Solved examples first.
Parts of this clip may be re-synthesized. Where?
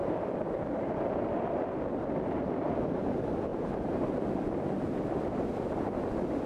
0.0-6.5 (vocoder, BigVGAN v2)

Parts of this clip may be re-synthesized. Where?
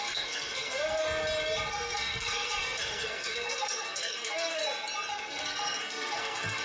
0.0-1.0 (codec, SNAC); 1.7-4.6; 5.1-6.6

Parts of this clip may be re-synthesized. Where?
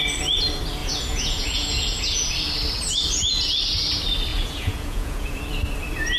0.8-2.3 (vocoder, Vocos); 4.3-5.4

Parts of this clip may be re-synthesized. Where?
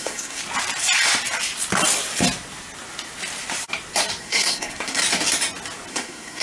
0.0-0.4 (codec, SNAC); 4.2-5.0; 5.9-6.4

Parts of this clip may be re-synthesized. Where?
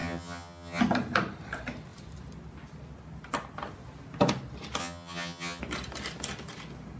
0.0-0.8 (vocoder, HiFi-GAN); 4.8-5.6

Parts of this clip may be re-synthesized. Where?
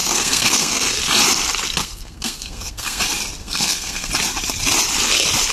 0.0-1.0 (codec, SNAC); 1.8-3.0; 3.4-4.1